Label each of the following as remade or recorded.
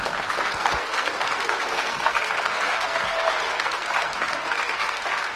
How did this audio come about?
remade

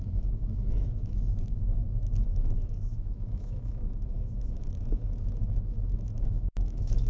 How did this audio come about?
remade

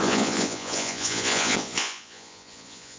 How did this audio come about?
remade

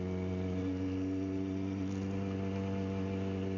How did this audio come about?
recorded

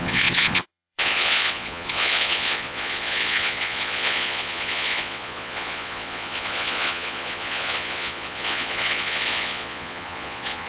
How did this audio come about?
remade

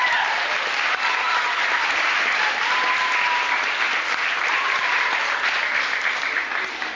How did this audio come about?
recorded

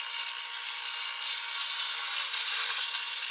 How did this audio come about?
recorded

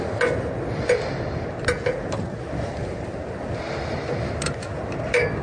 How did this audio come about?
recorded